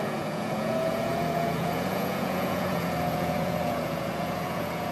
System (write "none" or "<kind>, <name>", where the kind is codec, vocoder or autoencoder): vocoder, Vocos